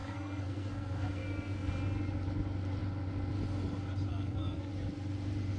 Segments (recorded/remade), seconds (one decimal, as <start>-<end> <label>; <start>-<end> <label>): 0.0-1.7 remade; 1.7-4.1 recorded; 4.1-4.7 remade; 4.7-5.6 recorded